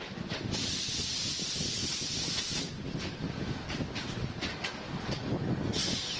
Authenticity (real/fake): real